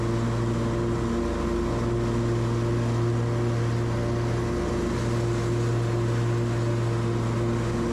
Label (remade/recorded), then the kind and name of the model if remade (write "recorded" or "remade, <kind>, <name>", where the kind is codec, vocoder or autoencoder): recorded